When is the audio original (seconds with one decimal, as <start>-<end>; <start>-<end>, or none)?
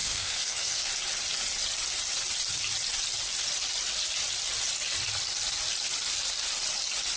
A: 0.9-7.2